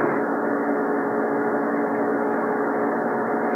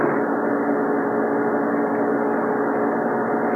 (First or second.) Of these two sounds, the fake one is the first